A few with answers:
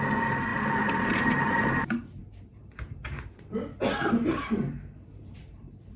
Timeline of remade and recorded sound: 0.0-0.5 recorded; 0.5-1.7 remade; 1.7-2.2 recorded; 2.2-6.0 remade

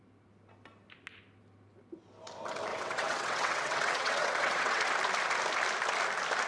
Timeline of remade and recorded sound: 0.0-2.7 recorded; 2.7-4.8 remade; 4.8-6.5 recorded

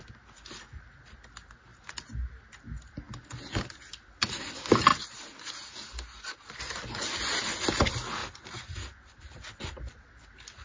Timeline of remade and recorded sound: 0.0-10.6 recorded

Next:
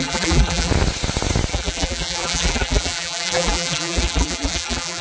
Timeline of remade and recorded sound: 0.0-0.7 remade; 0.7-1.5 recorded; 1.5-5.0 remade

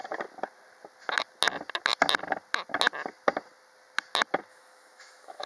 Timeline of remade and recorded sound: 0.0-4.5 recorded; 4.5-5.5 remade